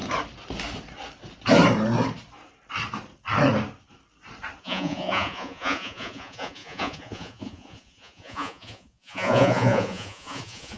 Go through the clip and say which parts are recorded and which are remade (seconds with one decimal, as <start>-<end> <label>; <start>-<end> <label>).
0.0-4.6 recorded; 4.6-10.8 remade